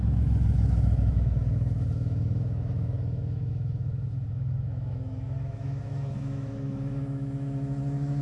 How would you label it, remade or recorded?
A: remade